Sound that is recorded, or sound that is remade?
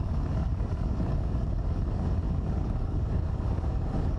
remade